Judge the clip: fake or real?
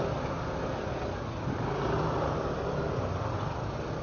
real